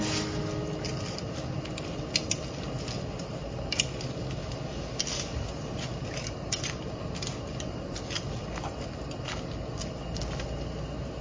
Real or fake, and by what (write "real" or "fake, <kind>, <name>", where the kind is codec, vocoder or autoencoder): real